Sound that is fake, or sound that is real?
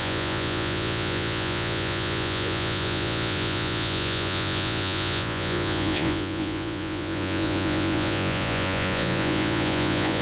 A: fake